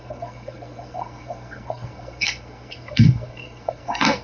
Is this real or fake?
fake